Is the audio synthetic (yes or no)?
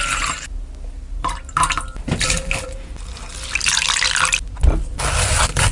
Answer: no